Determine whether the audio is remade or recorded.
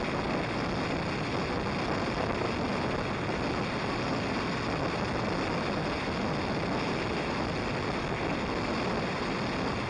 recorded